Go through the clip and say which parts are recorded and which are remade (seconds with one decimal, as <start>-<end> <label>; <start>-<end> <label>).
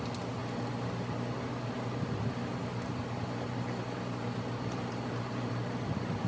0.0-6.3 recorded